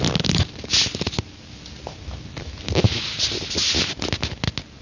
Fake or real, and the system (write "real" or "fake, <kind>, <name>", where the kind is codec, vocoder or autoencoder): real